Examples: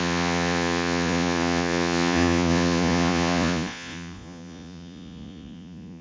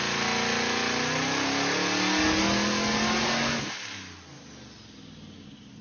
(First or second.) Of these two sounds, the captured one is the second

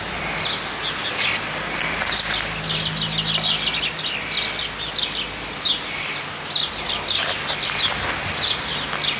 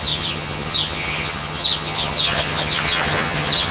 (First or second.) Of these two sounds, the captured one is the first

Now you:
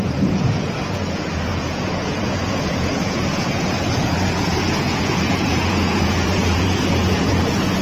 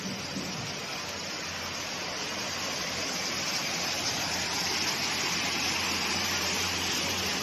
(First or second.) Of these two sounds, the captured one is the second